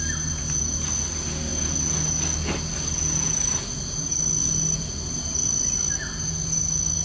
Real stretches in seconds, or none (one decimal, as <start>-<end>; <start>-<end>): 0.0-7.0